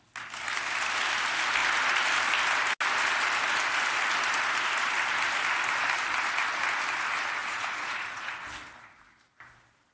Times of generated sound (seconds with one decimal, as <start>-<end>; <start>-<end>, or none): 7.4-8.3